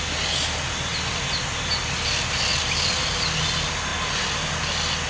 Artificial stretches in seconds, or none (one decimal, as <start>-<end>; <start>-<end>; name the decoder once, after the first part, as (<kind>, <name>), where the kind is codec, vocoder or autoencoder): none